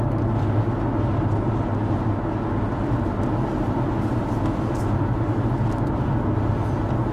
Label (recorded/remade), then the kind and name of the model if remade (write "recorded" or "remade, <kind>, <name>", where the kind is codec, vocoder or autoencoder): recorded